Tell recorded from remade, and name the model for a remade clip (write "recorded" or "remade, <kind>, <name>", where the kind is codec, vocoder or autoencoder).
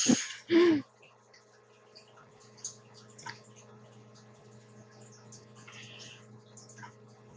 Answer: recorded